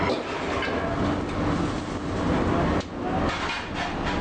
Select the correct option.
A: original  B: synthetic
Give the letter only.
A